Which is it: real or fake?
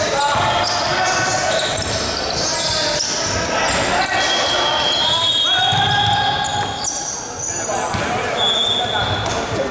real